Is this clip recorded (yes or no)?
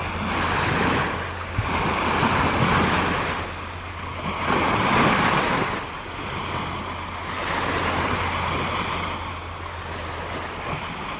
yes